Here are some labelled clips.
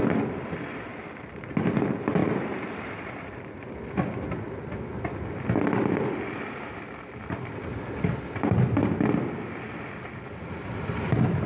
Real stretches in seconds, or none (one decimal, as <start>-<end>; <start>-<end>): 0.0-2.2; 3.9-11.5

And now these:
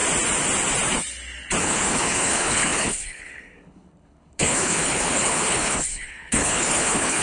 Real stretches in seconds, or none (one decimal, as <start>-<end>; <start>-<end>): 0.0-1.6

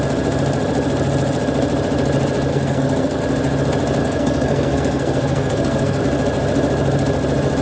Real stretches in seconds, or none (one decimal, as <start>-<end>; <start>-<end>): 0.0-2.5; 3.2-4.0; 6.0-7.6

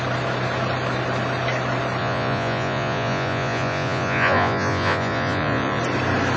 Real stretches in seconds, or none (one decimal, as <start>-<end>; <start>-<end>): 0.0-2.0; 5.8-6.4

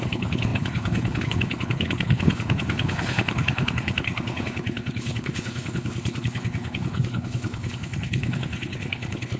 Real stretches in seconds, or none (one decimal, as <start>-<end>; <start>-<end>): none

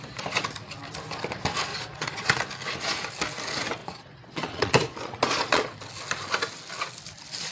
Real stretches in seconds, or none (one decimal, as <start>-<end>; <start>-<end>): 0.0-1.7; 2.4-3.8; 5.7-7.5

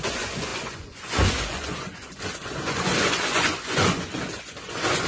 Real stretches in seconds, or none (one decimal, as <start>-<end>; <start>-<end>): none